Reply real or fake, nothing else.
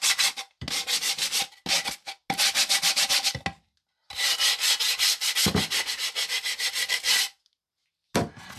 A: real